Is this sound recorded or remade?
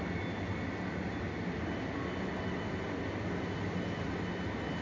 recorded